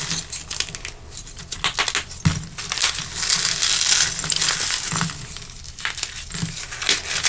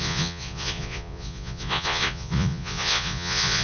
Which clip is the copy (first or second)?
second